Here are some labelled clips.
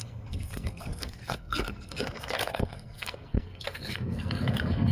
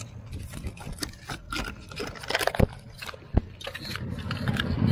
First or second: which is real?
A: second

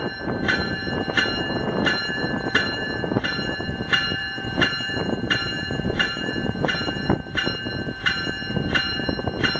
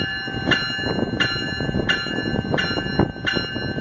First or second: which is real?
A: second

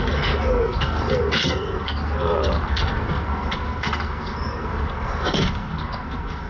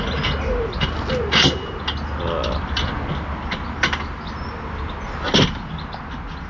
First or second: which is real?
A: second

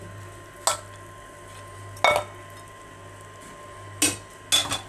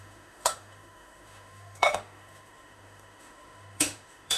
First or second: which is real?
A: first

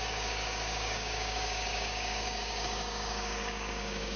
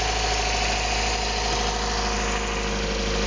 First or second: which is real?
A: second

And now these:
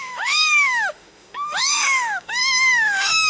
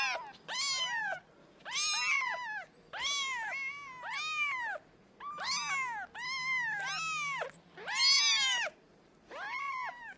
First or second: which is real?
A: second